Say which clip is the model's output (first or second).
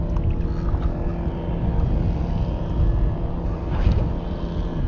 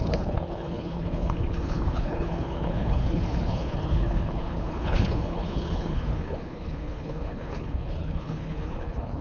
second